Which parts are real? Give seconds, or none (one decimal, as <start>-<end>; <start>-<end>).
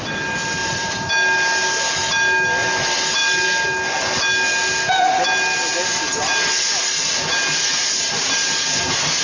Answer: 0.0-0.6; 1.1-9.2